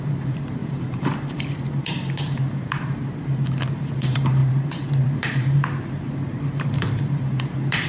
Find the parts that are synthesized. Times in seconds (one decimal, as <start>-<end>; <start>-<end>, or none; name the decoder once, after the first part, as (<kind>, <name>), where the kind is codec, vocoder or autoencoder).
0.0-7.9 (vocoder, BigVGAN v2)